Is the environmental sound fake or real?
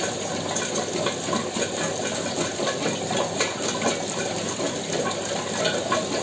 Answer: real